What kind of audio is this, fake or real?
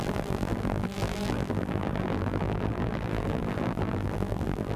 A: fake